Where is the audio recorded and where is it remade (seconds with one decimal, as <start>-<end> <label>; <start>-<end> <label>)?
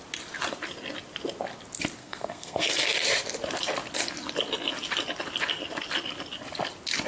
0.0-2.0 recorded; 2.0-2.7 remade; 2.7-7.1 recorded